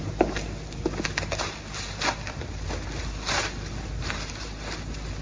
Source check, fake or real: real